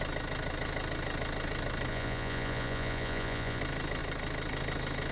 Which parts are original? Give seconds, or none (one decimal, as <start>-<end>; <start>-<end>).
0.0-1.9; 3.6-5.1